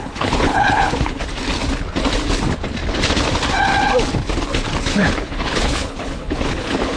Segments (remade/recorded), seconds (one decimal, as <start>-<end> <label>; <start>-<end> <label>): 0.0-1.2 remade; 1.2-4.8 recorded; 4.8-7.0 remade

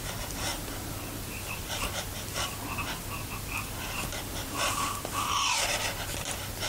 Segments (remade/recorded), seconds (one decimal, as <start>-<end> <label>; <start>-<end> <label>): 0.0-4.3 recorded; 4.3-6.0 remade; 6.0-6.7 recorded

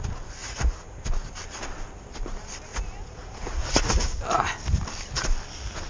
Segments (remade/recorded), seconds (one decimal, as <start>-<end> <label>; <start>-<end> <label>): 0.0-0.4 recorded; 0.4-1.0 remade; 1.0-2.7 recorded; 2.7-4.2 remade; 4.2-5.9 recorded

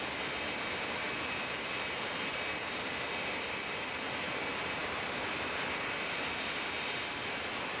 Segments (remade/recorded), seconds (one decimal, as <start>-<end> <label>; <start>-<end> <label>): 0.0-7.8 recorded

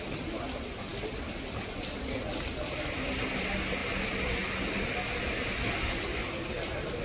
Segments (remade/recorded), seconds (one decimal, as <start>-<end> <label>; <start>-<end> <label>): 0.0-7.0 recorded

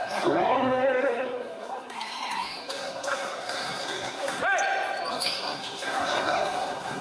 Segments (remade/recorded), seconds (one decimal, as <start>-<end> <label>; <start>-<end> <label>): 0.0-4.4 remade; 4.4-5.1 recorded; 5.1-7.0 remade

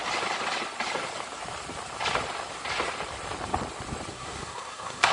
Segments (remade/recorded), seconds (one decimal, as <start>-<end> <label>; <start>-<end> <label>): 0.0-4.1 recorded; 4.1-5.1 remade

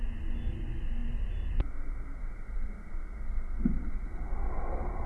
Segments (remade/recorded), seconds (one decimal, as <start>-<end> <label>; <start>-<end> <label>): 0.0-5.1 recorded